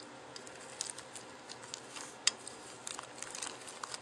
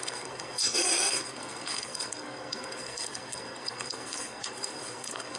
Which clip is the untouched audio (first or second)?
first